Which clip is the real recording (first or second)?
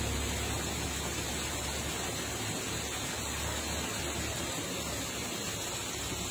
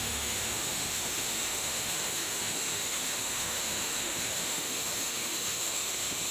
first